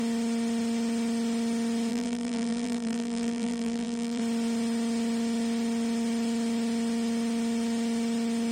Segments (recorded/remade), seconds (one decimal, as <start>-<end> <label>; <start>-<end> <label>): 0.0-1.9 recorded; 1.9-4.2 remade; 4.2-8.5 recorded